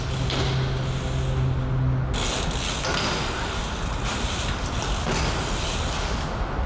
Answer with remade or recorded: recorded